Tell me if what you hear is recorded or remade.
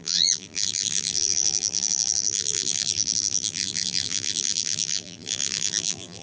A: remade